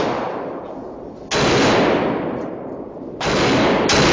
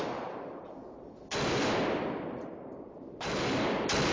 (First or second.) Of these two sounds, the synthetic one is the second